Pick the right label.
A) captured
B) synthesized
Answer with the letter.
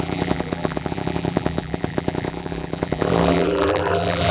B